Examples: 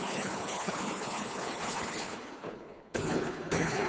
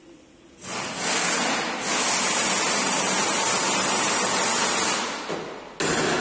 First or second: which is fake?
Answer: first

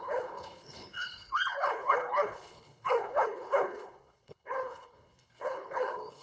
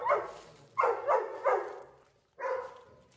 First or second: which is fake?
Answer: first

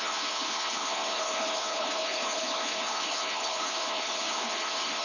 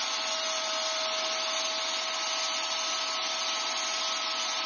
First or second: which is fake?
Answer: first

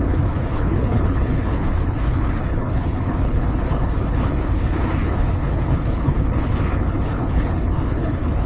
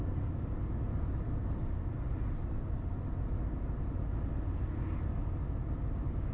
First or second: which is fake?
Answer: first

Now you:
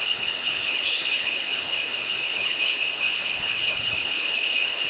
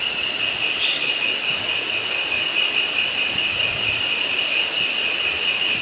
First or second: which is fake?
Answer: first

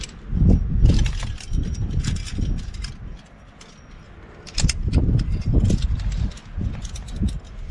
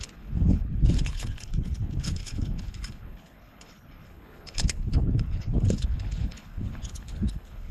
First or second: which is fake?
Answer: second